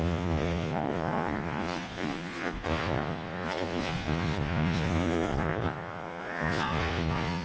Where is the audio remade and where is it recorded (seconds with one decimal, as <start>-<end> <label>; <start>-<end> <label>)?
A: 0.0-7.4 remade